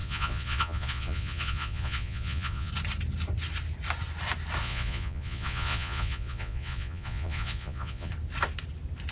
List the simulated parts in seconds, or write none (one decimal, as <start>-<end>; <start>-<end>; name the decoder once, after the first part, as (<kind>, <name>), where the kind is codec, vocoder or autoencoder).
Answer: 0.0-2.7 (vocoder, Vocos); 4.6-8.1